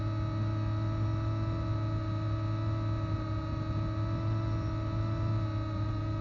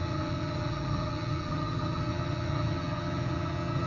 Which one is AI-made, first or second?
second